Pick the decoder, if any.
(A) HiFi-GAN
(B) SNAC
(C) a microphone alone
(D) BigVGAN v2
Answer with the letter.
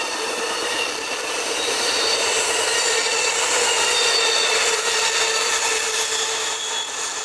D